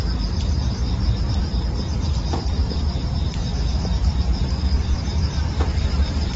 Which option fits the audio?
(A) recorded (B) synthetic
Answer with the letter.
B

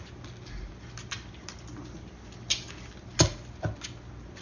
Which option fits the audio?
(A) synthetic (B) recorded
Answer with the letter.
B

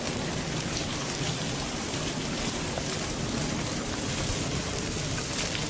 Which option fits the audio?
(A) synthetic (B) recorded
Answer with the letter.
A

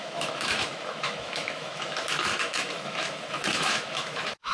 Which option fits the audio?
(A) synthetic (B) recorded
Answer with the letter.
A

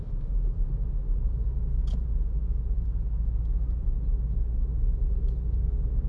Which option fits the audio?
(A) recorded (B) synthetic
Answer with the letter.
A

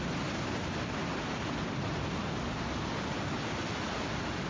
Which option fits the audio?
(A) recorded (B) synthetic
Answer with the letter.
A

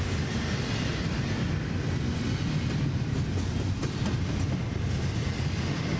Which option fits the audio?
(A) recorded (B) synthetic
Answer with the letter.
A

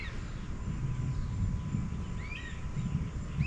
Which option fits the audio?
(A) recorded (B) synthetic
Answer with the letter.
A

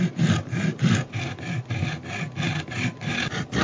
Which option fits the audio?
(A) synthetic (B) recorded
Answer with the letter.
B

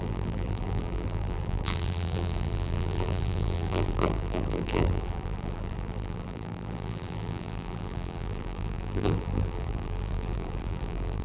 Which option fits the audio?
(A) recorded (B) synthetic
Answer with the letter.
B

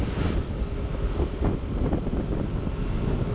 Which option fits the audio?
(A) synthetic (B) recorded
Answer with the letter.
B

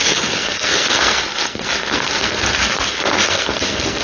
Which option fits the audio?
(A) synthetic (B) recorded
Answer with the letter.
A